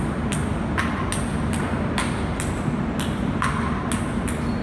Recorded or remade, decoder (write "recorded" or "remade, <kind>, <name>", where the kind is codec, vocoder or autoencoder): recorded